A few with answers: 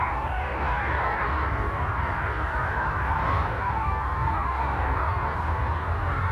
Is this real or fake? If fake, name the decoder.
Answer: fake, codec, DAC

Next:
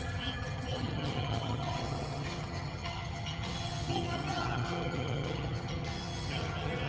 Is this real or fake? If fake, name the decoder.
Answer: fake, vocoder, HiFi-GAN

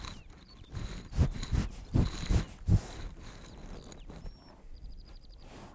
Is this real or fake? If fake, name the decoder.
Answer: real